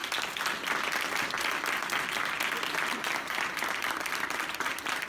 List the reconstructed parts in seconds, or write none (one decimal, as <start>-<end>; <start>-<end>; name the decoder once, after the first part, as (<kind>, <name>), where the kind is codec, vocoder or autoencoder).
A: 3.1-5.1 (vocoder, BigVGAN v2)